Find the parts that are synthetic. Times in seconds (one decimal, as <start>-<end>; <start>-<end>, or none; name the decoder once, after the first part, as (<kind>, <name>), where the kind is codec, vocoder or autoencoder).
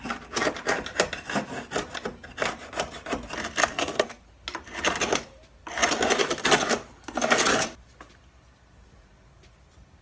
3.6-4.2 (codec, SNAC)